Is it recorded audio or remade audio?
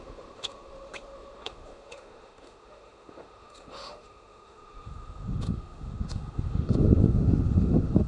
remade